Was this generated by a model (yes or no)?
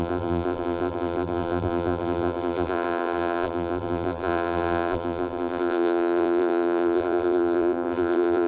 yes